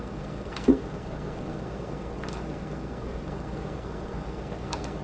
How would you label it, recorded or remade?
remade